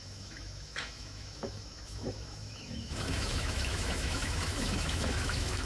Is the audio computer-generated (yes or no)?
yes